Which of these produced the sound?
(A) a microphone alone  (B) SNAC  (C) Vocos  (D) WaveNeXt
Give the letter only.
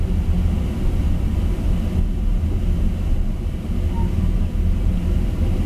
A